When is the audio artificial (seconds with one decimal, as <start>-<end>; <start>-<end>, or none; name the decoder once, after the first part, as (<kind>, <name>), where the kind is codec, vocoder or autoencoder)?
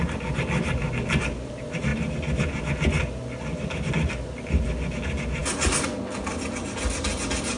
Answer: none